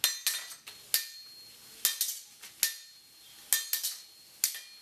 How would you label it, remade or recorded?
recorded